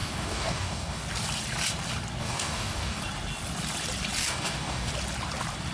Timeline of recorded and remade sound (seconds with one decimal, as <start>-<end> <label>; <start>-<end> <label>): 0.0-1.0 remade; 1.0-2.2 recorded; 2.2-3.0 remade; 3.0-4.2 recorded; 4.2-4.9 remade; 4.9-5.7 recorded

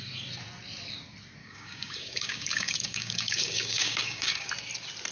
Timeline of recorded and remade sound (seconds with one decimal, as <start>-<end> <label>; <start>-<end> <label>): 0.0-1.4 recorded; 1.4-4.5 remade; 4.5-5.1 recorded

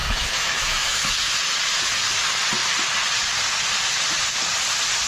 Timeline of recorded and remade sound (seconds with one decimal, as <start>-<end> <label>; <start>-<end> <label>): 0.0-1.3 remade; 1.3-5.1 recorded

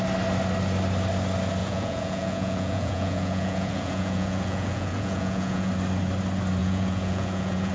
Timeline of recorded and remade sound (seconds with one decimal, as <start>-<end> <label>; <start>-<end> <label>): 0.0-1.6 recorded; 1.6-5.7 remade; 5.7-6.6 recorded; 6.6-7.7 remade

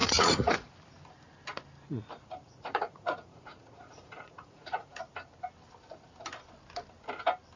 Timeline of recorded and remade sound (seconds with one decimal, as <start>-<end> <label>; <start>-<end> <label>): 0.0-0.7 remade; 0.7-2.5 recorded; 2.5-5.0 remade; 5.0-7.6 recorded

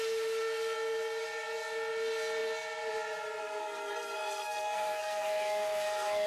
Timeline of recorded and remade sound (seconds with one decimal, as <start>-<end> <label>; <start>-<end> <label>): 0.0-3.4 recorded; 3.4-6.3 remade

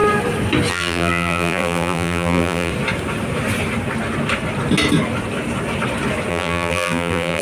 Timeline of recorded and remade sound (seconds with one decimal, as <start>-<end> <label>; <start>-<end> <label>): 0.0-0.7 recorded; 0.7-2.7 remade; 2.7-6.3 recorded; 6.3-7.4 remade